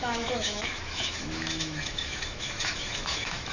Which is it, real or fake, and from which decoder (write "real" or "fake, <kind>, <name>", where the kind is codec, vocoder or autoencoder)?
fake, autoencoder, DAC-VAE